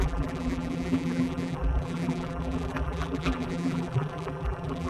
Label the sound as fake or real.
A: fake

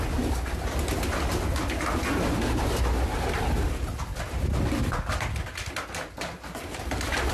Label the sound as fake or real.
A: real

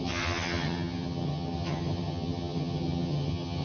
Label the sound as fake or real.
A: fake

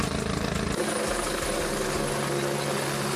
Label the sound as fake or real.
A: real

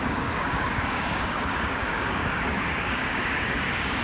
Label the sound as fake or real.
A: fake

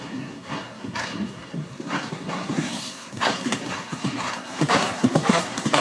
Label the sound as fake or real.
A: fake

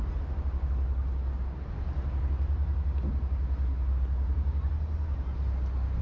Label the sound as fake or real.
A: real